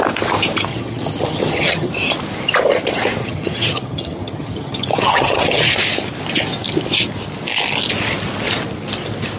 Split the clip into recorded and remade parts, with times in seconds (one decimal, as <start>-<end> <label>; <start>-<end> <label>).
0.0-0.7 recorded; 0.7-1.9 remade; 1.9-3.2 recorded; 3.2-5.8 remade; 5.8-9.4 recorded